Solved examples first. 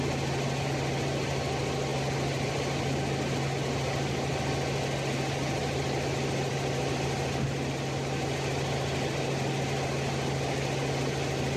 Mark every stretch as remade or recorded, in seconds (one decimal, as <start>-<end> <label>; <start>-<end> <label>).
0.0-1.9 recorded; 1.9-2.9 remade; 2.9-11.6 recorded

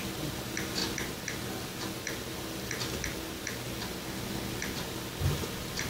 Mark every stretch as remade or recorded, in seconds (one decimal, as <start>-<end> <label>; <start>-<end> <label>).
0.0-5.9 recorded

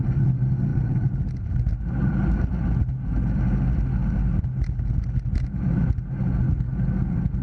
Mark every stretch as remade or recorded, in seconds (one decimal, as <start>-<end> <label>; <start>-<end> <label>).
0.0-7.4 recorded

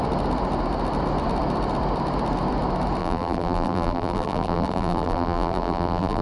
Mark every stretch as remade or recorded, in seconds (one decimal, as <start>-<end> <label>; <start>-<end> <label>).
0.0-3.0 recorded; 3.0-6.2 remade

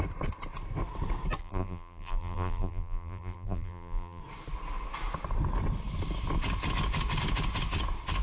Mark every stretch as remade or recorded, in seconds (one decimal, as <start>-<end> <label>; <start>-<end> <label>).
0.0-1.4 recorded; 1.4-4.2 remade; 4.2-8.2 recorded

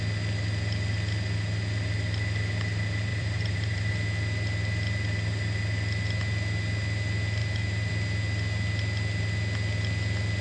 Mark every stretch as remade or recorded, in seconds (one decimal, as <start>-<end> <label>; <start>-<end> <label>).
0.0-3.1 recorded; 3.1-3.9 remade; 3.9-7.4 recorded; 7.4-7.9 remade; 7.9-10.4 recorded

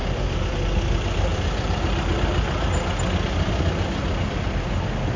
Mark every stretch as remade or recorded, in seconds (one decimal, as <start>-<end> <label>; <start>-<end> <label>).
0.0-1.3 recorded; 1.3-1.8 remade; 1.8-5.2 recorded